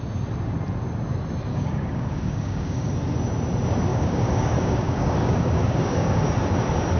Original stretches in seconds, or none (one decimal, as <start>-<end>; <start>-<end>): 0.0-1.5; 2.9-3.9; 6.3-7.0